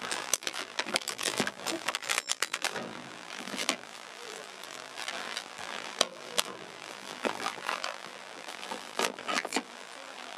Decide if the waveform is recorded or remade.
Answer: remade